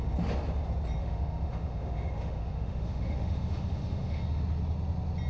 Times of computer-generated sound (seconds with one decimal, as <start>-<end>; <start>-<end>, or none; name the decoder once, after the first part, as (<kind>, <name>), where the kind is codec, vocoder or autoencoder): 1.0-4.2 (autoencoder, DAC-VAE)